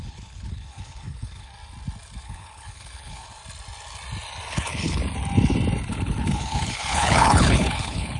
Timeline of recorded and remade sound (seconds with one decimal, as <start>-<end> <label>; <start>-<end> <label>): 0.0-1.5 remade; 1.5-2.2 recorded; 2.2-3.4 remade; 3.4-4.5 recorded; 4.5-5.0 remade; 5.0-5.9 recorded; 5.9-8.2 remade